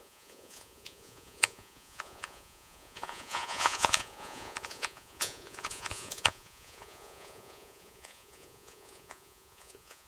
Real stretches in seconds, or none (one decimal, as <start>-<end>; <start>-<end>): none